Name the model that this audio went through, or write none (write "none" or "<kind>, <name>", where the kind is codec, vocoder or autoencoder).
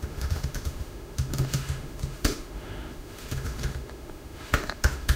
autoencoder, DAC-VAE